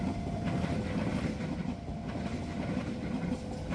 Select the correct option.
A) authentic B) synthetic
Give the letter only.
A